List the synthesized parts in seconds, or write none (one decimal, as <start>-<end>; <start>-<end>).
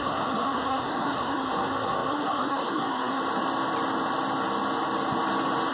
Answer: 0.0-3.2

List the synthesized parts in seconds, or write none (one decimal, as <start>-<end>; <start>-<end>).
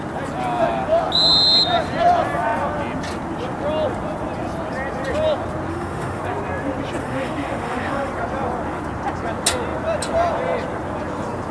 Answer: 5.7-6.2; 7.0-8.1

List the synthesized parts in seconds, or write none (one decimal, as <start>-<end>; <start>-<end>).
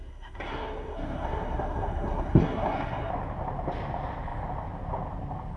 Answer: 0.0-3.1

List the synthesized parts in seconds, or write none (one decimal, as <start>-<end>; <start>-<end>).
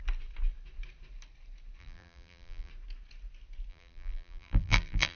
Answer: 1.8-2.7; 3.7-5.2